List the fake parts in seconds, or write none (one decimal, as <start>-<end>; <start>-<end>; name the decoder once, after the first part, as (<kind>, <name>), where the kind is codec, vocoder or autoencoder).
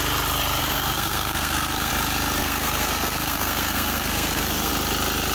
0.6-1.9 (codec, SNAC); 2.4-4.7